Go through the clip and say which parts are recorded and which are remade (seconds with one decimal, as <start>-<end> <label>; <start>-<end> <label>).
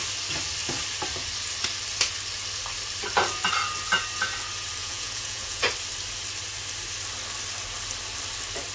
0.0-4.8 recorded; 4.8-5.6 remade; 5.6-8.7 recorded